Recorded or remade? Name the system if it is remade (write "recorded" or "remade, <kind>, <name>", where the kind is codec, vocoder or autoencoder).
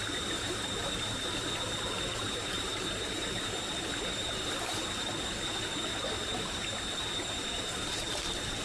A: recorded